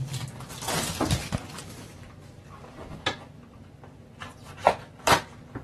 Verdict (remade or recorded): recorded